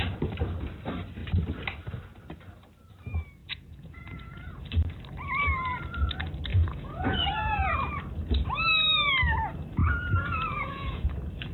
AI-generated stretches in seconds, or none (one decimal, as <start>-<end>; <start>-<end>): 3.4-4.6; 6.5-7.7; 9.8-11.1